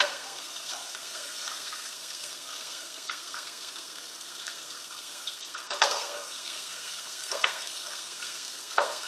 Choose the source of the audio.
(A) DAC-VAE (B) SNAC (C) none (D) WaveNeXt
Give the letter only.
B